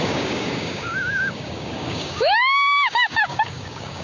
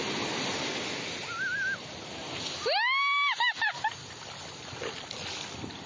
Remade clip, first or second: first